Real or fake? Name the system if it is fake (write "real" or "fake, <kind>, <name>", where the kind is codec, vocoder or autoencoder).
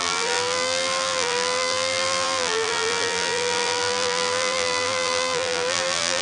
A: fake, vocoder, BigVGAN v2